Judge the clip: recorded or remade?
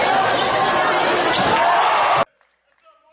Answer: recorded